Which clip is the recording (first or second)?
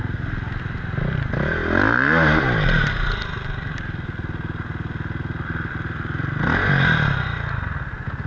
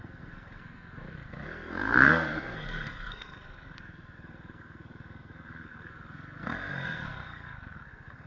first